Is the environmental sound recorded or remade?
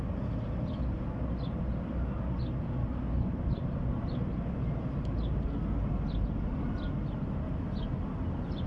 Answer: recorded